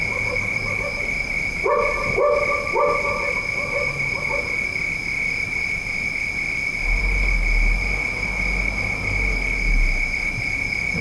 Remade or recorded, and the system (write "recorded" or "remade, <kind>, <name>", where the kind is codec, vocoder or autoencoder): recorded